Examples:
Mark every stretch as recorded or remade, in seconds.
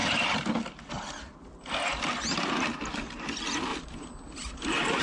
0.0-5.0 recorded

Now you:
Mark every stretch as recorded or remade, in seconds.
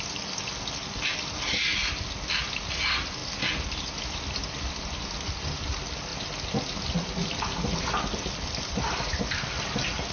0.0-10.1 recorded